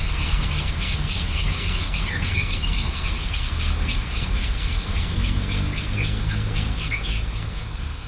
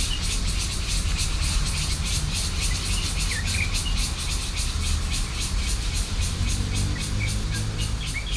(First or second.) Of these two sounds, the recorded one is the second